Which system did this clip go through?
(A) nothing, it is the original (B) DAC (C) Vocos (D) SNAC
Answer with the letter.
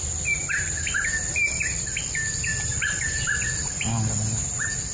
A